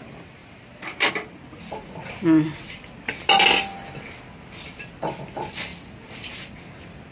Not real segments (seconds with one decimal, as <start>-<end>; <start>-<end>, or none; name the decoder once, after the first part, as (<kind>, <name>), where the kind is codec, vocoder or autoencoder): none